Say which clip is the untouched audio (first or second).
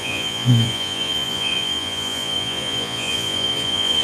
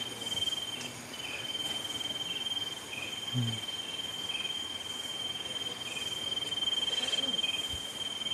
second